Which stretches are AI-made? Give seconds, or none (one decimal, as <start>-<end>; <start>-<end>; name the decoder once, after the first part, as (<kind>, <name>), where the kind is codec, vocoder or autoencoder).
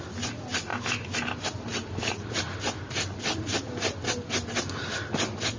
none